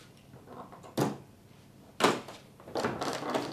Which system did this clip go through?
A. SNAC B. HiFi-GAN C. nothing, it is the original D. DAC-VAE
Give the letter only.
C